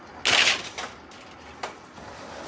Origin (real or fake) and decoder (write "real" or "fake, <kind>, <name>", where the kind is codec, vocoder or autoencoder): real